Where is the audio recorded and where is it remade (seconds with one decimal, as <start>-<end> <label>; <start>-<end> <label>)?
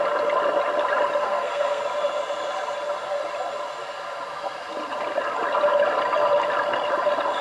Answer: 0.0-1.2 recorded; 1.2-1.8 remade; 1.8-7.4 recorded